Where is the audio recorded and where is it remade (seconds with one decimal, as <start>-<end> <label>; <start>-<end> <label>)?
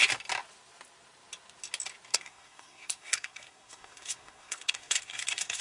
0.0-2.1 recorded; 2.1-5.6 remade